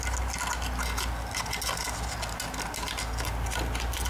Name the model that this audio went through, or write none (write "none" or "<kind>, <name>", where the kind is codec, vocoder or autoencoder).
none